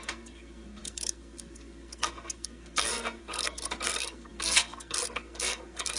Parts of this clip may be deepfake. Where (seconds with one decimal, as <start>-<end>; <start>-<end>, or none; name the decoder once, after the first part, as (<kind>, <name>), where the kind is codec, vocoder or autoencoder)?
0.0-6.0 (codec, SNAC)